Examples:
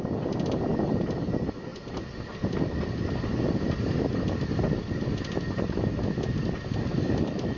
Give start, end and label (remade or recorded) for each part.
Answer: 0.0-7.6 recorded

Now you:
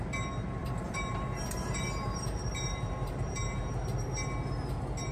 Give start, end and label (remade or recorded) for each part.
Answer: 0.0-0.6 recorded; 0.6-3.6 remade; 3.6-5.1 recorded

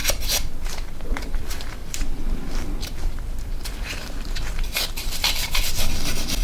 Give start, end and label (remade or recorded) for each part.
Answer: 0.0-1.4 remade; 1.4-1.8 recorded; 1.8-5.6 remade; 5.6-6.4 recorded